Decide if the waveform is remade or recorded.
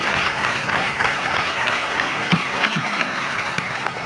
remade